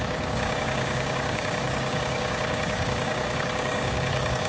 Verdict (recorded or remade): remade